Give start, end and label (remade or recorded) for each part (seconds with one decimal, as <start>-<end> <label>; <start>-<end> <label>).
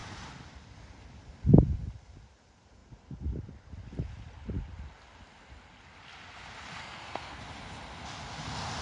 0.0-6.8 recorded; 6.8-7.4 remade; 7.4-8.8 recorded